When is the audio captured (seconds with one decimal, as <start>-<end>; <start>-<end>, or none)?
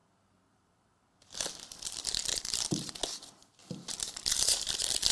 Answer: 1.5-2.3; 2.9-3.6; 4.5-5.1